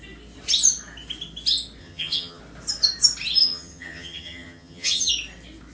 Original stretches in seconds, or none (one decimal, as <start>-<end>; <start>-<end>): 0.0-1.8; 2.4-3.4; 5.1-5.7